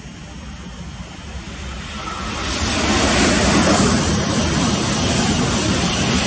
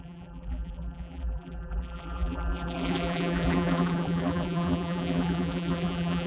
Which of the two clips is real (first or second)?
first